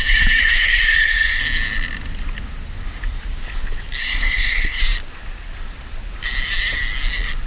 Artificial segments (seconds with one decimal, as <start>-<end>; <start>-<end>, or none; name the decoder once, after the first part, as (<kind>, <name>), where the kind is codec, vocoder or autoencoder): 0.4-1.4 (codec, SNAC); 4.0-4.8